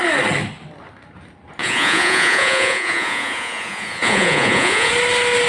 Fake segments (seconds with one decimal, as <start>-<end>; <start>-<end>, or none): 1.6-4.9